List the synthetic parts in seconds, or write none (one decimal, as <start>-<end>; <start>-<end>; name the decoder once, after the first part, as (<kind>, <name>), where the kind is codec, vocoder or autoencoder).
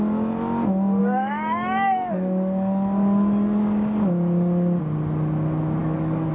1.0-4.8 (codec, DAC); 5.8-6.3